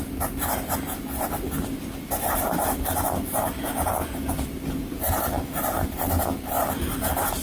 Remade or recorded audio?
recorded